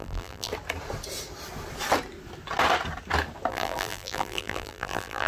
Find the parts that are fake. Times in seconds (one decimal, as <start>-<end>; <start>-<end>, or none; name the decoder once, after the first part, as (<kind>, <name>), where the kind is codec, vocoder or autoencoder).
0.0-0.5 (vocoder, BigVGAN v2); 3.5-5.3